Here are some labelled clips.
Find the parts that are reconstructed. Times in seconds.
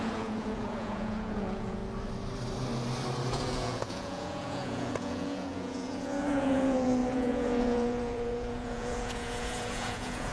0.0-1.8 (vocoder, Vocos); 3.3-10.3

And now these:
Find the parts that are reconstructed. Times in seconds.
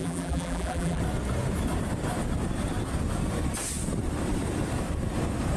0.0-1.0 (vocoder, BigVGAN v2)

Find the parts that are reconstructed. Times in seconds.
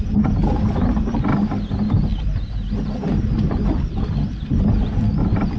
2.1-4.6 (vocoder, BigVGAN v2)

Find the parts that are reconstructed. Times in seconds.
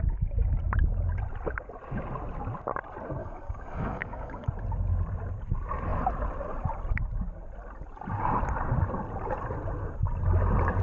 3.2-4.5 (codec, DAC)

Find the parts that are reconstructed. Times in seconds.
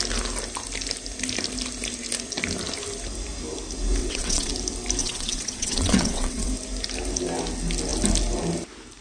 4.0-4.5 (vocoder, WaveNeXt); 5.0-6.5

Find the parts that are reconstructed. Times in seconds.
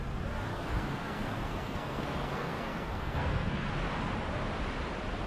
0.5-3.7 (codec, SNAC)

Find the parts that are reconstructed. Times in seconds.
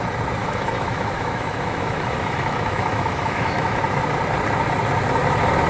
0.4-3.8 (autoencoder, DAC-VAE)